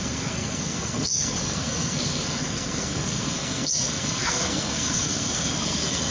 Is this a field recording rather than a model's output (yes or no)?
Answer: no